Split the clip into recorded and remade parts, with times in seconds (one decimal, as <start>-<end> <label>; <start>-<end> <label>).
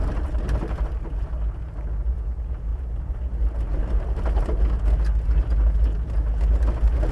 0.0-7.1 recorded